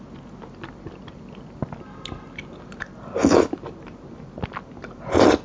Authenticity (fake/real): real